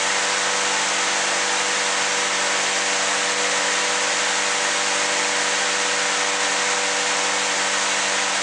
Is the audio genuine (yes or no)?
yes